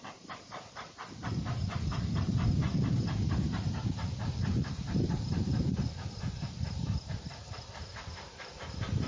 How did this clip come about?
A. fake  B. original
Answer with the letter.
A